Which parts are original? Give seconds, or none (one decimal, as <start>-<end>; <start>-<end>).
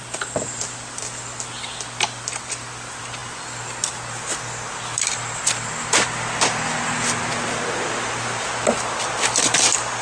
0.0-10.0